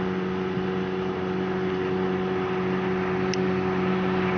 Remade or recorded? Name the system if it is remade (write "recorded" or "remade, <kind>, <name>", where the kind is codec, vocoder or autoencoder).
recorded